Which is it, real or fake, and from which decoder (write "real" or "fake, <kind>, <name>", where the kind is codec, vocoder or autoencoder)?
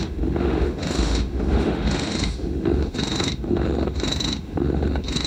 fake, autoencoder, DAC-VAE